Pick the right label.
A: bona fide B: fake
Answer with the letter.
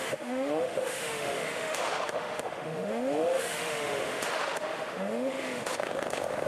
B